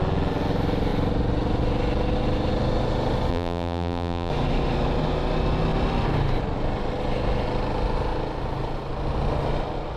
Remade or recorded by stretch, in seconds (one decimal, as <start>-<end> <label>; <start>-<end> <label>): 0.0-3.3 recorded; 3.3-4.3 remade; 4.3-10.0 recorded